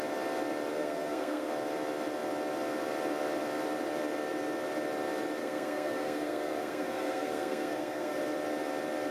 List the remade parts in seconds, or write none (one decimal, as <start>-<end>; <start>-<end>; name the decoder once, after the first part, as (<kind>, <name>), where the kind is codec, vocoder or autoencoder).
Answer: 0.7-1.5 (codec, SNAC); 5.4-8.2